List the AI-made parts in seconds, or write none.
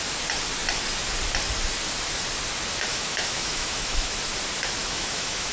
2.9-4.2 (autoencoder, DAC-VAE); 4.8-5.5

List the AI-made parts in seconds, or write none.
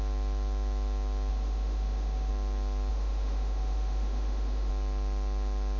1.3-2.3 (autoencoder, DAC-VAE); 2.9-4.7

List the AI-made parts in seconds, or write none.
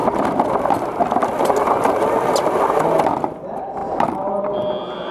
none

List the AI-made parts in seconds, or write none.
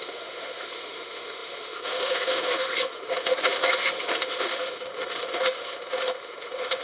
0.0-6.8 (autoencoder, DAC-VAE)